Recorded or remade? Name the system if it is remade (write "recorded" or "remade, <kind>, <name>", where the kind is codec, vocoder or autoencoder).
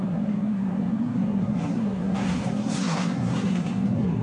remade, codec, SNAC